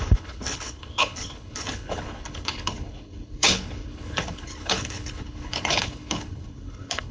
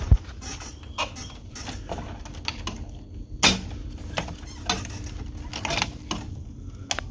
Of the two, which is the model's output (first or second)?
first